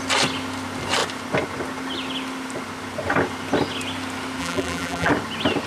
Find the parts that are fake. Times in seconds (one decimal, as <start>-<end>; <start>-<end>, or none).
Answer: 4.4-5.1